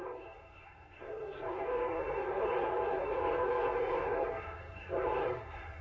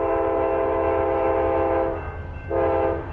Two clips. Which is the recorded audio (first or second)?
second